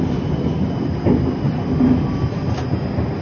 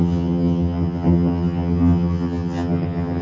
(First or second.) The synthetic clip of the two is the second